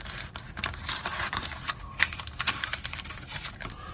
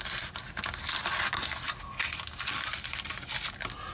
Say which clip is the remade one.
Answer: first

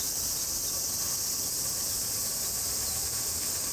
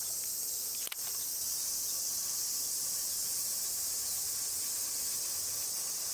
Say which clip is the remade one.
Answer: second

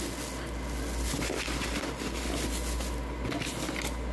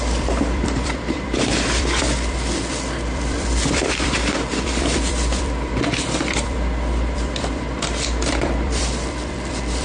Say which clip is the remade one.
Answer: second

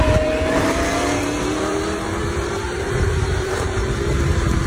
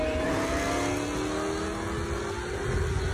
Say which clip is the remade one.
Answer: first